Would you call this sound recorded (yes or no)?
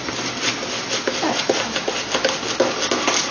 yes